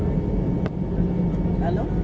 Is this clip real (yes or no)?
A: yes